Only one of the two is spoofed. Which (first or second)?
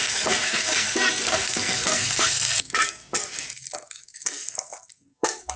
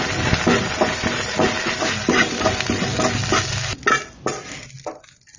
first